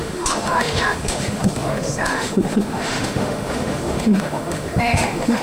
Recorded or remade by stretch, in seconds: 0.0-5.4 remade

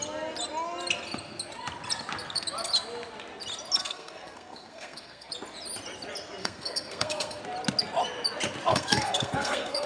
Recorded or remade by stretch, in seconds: 0.0-3.8 recorded; 3.8-5.3 remade; 5.3-6.4 recorded; 6.4-7.4 remade; 7.4-8.7 recorded; 8.7-9.9 remade

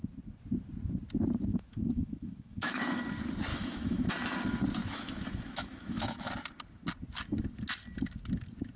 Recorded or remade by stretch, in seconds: 0.0-1.5 recorded; 1.5-3.0 remade; 3.0-3.5 recorded; 3.5-4.1 remade; 4.1-4.8 recorded; 4.8-6.3 remade; 6.3-8.8 recorded

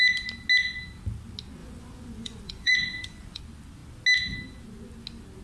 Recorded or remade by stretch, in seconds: 0.0-1.6 recorded; 1.6-3.4 remade; 3.4-5.4 recorded

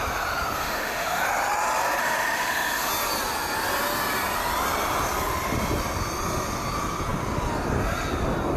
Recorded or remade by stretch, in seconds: 0.0-0.6 recorded; 0.6-1.2 remade; 1.2-2.0 recorded; 2.0-2.9 remade; 2.9-8.6 recorded

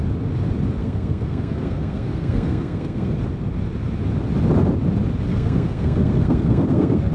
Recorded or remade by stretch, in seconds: 0.0-0.8 recorded; 0.8-3.2 remade; 3.2-5.3 recorded; 5.3-7.1 remade

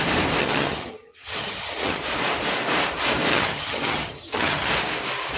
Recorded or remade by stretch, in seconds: 0.0-0.4 recorded; 0.4-2.0 remade; 2.0-3.3 recorded; 3.3-4.7 remade; 4.7-5.4 recorded

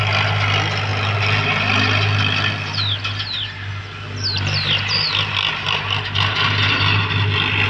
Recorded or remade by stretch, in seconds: 0.0-7.7 recorded